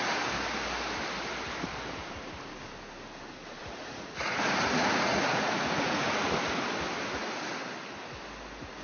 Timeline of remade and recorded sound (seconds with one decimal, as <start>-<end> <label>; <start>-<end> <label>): 0.0-3.6 recorded; 3.6-6.3 remade; 6.3-8.8 recorded